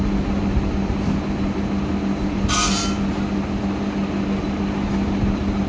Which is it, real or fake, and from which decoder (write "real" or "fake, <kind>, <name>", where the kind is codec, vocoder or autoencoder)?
real